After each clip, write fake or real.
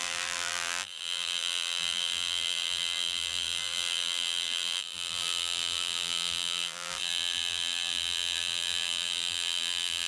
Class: fake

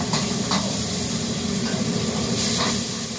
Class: real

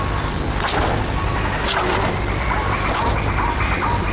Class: real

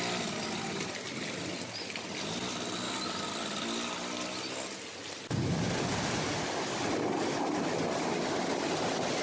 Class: real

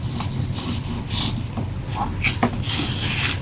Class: real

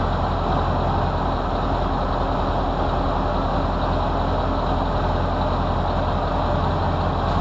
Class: real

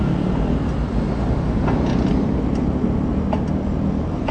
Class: real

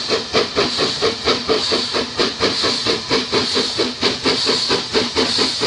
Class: real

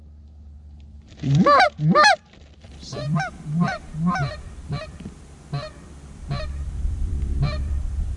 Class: fake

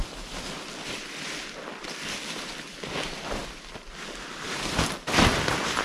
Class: real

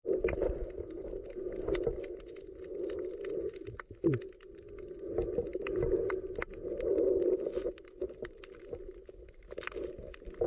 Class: real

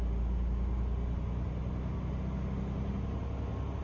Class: real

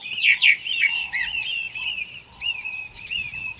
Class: fake